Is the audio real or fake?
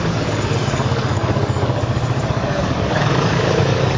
fake